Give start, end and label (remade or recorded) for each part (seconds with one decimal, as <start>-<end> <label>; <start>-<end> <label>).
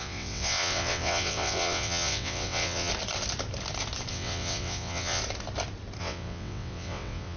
0.0-2.9 remade; 2.9-4.1 recorded; 4.1-5.2 remade; 5.2-6.0 recorded; 6.0-7.4 remade